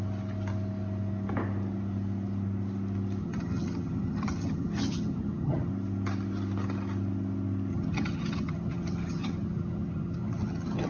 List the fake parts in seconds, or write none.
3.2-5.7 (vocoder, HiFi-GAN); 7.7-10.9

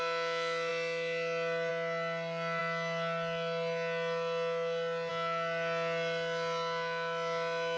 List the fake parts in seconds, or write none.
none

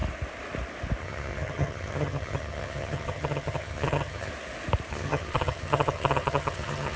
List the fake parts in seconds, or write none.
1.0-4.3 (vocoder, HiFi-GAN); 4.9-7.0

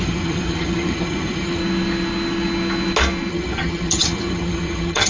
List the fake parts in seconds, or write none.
0.0-1.6 (vocoder, HiFi-GAN); 3.3-5.1

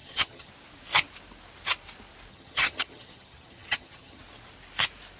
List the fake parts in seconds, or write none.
0.0-0.5 (vocoder, HiFi-GAN); 2.3-4.2

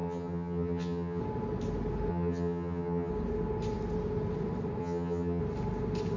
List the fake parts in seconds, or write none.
0.0-1.2 (vocoder, HiFi-GAN); 2.1-3.1; 4.8-5.4